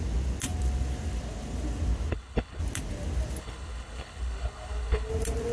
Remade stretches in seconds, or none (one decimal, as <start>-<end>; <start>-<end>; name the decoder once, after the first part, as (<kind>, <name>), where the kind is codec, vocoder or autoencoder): 2.1-2.6 (codec, HILCodec); 3.4-5.1